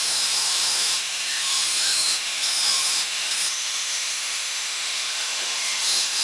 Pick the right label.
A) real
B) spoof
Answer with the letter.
B